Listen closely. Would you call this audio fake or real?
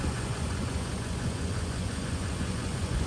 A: fake